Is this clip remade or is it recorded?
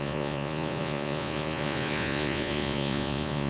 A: remade